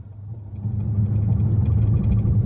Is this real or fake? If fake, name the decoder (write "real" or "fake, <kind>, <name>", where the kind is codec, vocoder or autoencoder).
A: real